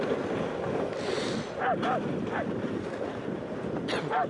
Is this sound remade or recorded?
recorded